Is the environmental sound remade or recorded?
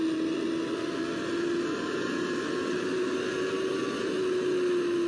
recorded